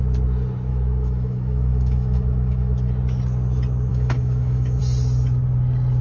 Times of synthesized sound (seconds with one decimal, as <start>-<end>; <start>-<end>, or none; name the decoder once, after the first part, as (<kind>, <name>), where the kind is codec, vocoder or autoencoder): 0.7-2.9 (autoencoder, DAC-VAE); 3.9-4.8